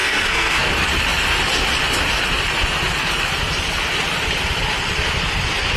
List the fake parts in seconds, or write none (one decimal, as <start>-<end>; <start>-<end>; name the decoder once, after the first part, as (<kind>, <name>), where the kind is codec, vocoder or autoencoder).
0.0-0.7 (codec, SNAC)